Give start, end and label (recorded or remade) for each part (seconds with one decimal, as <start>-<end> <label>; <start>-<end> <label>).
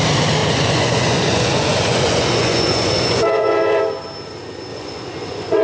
0.0-0.4 recorded; 0.4-3.8 remade; 3.8-4.7 recorded; 4.7-5.6 remade